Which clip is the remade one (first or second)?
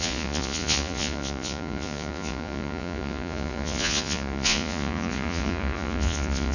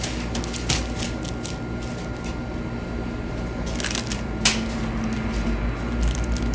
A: first